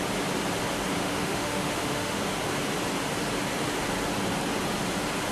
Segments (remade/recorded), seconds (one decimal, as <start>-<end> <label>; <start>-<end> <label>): 0.0-1.0 recorded; 1.0-2.2 remade; 2.2-5.3 recorded